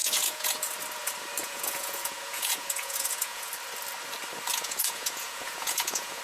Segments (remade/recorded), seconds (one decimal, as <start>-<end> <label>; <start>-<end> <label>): 0.0-0.7 remade; 0.7-1.4 recorded; 1.4-3.5 remade; 3.5-4.5 recorded; 4.5-6.2 remade